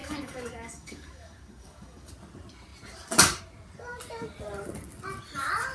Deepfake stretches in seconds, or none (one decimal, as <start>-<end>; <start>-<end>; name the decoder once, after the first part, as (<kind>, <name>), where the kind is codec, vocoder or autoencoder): 0.0-2.1 (codec, DAC)